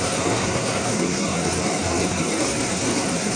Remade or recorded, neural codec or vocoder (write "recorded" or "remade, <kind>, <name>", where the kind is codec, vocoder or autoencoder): remade, codec, SNAC